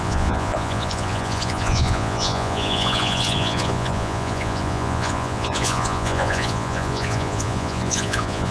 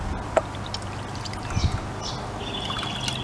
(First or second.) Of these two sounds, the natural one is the second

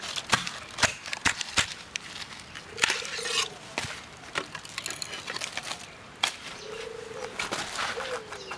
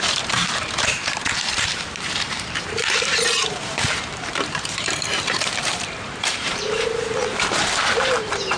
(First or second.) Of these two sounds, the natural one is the first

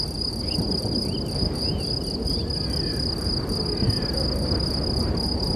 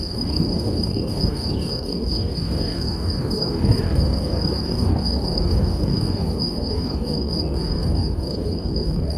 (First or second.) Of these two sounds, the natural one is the first